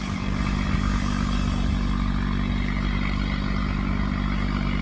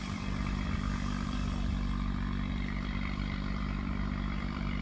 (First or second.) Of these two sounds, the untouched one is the first